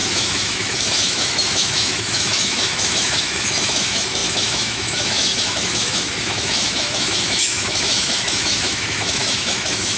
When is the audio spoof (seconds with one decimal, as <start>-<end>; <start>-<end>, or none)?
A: 0.0-10.0

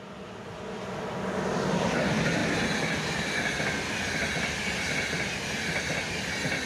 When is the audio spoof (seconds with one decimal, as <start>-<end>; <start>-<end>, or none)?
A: none